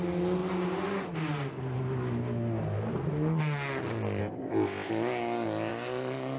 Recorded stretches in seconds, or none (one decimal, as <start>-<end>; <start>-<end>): 0.0-4.2; 4.9-6.4